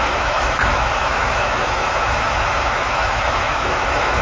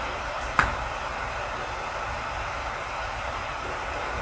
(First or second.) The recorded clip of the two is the second